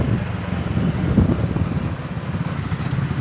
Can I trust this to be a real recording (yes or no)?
yes